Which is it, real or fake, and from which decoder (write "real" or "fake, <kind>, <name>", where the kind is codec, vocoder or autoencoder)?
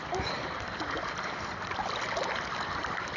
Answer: real